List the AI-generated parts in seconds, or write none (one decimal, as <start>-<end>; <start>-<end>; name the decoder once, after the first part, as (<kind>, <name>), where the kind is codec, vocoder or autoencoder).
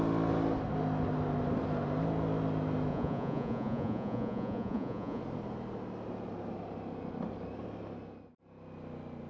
2.9-5.2 (vocoder, Vocos)